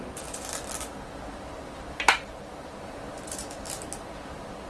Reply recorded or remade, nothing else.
recorded